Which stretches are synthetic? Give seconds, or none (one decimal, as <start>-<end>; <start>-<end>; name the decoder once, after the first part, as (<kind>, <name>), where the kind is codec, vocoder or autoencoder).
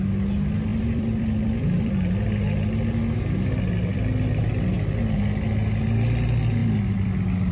0.7-1.9 (vocoder, BigVGAN v2); 3.9-4.5